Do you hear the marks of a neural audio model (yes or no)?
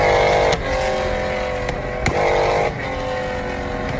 no